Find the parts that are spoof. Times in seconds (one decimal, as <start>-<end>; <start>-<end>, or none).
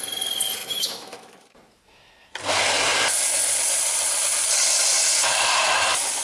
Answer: 0.6-2.3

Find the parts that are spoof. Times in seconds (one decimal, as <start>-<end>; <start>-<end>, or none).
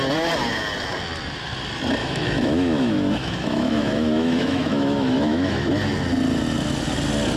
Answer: 2.0-5.7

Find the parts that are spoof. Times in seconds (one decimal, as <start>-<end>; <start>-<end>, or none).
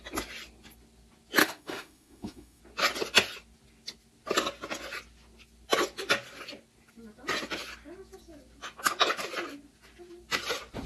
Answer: 1.4-2.6